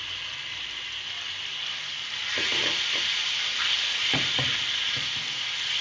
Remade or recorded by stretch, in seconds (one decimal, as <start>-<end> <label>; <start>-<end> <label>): 0.0-2.5 recorded; 2.5-4.8 remade; 4.8-5.8 recorded

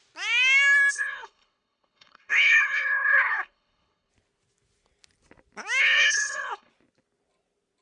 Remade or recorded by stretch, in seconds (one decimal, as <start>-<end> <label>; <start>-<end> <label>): 0.0-0.9 recorded; 0.9-4.1 remade; 4.1-5.8 recorded; 5.8-6.7 remade; 6.7-7.8 recorded

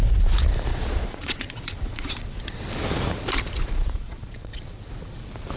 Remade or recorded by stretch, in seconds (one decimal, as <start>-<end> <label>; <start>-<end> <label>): 0.0-0.7 recorded; 0.7-2.6 remade; 2.6-3.6 recorded; 3.6-4.9 remade; 4.9-5.6 recorded

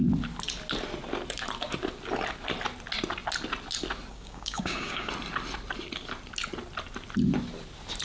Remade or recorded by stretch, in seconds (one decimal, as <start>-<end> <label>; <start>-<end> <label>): 0.0-4.1 recorded; 4.1-5.1 remade; 5.1-8.0 recorded